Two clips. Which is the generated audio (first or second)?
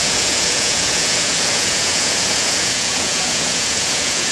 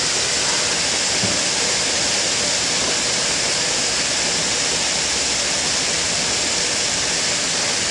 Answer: first